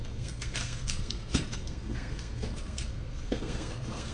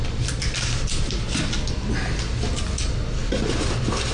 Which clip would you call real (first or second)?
second